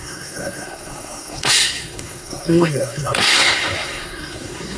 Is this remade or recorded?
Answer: remade